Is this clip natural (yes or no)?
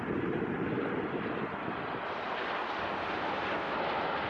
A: yes